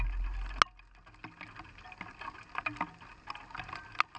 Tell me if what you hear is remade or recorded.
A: recorded